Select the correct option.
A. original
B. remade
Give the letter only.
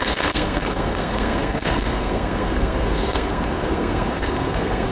B